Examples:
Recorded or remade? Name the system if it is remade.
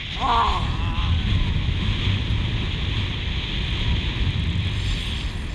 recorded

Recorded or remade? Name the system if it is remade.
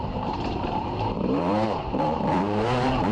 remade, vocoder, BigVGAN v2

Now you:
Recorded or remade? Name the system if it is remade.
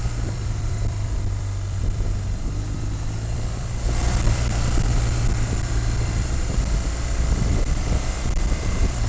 remade, vocoder, BigVGAN v2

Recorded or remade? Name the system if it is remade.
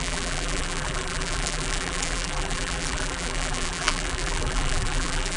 remade, vocoder, BigVGAN v2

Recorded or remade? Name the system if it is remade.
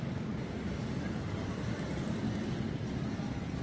recorded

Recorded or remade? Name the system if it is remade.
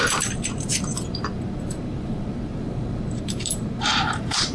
remade, vocoder, BigVGAN v2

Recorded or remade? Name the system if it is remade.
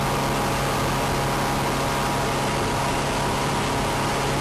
recorded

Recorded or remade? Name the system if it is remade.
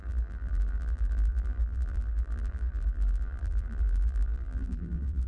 remade, vocoder, BigVGAN v2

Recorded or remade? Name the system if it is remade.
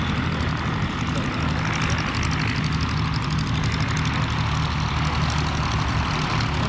recorded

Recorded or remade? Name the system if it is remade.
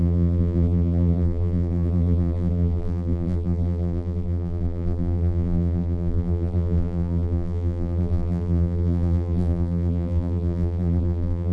remade, vocoder, BigVGAN v2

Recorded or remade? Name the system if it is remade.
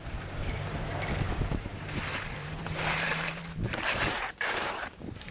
remade, vocoder, BigVGAN v2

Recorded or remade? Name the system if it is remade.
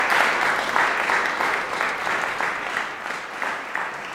recorded